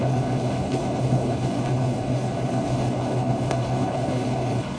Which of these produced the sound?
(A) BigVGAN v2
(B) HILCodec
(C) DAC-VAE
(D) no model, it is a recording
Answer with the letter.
B